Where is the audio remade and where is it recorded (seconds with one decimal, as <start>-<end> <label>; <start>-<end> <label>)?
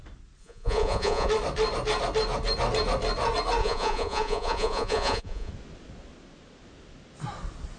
0.0-0.4 recorded; 0.4-1.3 remade; 1.3-3.6 recorded; 3.6-5.5 remade; 5.5-7.8 recorded